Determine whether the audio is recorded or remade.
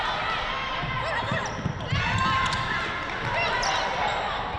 recorded